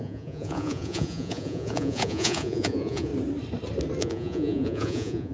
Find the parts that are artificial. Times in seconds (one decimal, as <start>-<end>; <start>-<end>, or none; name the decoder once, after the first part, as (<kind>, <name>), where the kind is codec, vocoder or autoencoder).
0.0-3.1 (vocoder, Vocos); 4.0-5.3